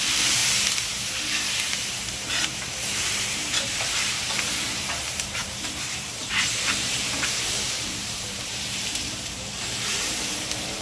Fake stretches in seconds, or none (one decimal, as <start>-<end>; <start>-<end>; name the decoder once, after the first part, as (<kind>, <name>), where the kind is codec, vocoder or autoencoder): 0.0-0.4 (vocoder, BigVGAN v2); 1.8-10.8